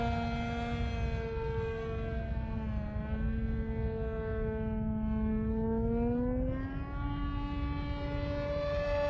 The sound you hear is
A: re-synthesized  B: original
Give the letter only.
B